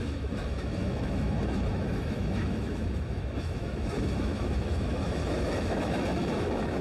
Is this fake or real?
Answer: fake